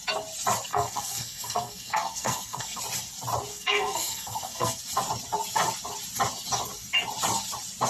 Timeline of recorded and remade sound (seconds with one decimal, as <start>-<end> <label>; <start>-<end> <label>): 0.0-0.7 recorded; 0.7-2.8 remade; 2.8-3.5 recorded; 3.5-4.8 remade; 4.8-7.9 recorded